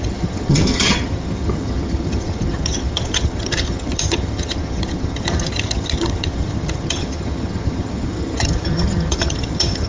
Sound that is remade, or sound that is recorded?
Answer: remade